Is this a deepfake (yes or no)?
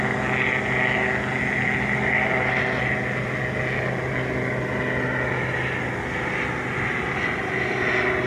no